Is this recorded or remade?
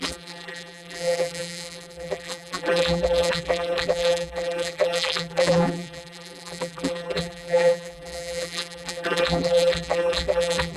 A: remade